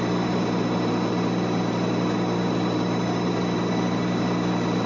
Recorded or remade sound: recorded